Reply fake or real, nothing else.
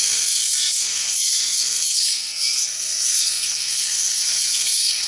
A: fake